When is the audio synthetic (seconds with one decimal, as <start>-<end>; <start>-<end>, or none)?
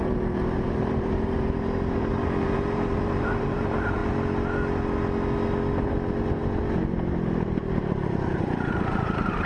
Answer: 0.0-4.0; 7.7-9.5